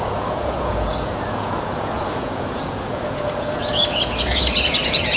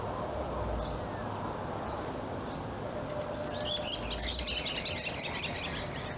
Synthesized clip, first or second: first